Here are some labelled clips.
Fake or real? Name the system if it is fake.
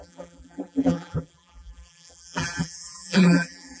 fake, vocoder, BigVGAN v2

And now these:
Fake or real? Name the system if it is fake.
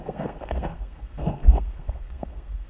fake, codec, SNAC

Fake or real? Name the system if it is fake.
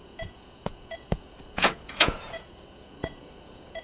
fake, vocoder, Vocos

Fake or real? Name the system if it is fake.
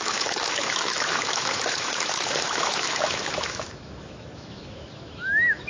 fake, autoencoder, DAC-VAE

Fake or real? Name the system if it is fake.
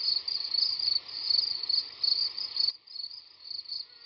real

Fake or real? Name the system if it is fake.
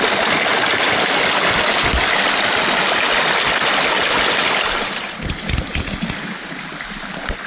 real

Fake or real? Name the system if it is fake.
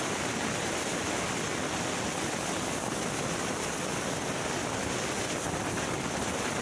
real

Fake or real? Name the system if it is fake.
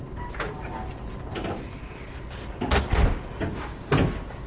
real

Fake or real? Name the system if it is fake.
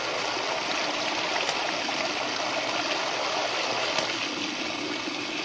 real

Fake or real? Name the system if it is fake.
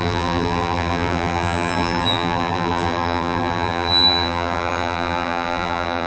fake, vocoder, BigVGAN v2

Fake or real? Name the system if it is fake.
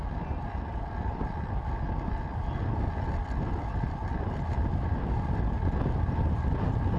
real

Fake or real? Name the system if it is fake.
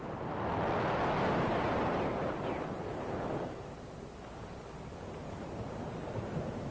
real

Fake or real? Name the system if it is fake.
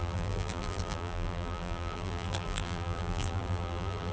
fake, vocoder, BigVGAN v2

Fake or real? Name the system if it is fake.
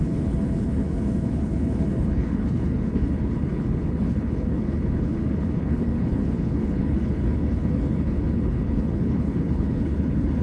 fake, codec, HILCodec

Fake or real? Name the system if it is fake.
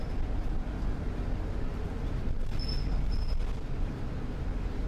real